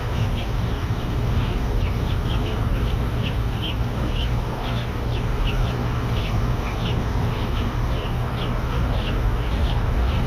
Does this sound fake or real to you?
fake